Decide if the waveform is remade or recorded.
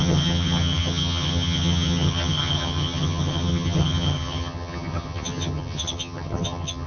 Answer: remade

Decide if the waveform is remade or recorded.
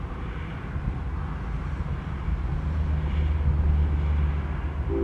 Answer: recorded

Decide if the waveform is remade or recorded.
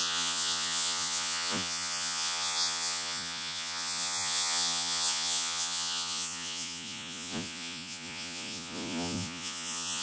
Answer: remade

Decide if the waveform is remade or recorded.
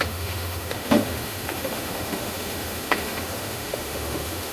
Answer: remade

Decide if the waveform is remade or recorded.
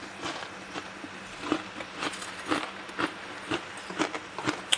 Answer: recorded